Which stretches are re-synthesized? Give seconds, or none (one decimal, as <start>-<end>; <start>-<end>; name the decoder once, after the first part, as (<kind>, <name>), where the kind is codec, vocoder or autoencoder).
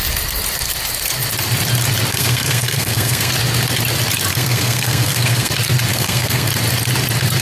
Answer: 2.1-3.3 (codec, SNAC); 4.3-5.5; 5.9-6.5